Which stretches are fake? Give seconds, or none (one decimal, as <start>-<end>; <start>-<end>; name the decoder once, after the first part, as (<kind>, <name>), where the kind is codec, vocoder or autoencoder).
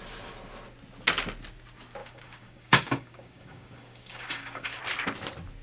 2.0-4.8 (codec, DAC)